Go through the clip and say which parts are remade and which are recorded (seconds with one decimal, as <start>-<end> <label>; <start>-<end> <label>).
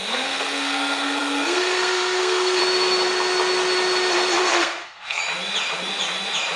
0.0-2.6 remade; 2.6-4.4 recorded; 4.4-5.2 remade; 5.2-6.6 recorded